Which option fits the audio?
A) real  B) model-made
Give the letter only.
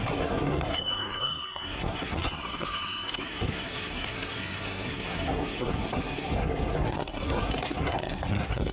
B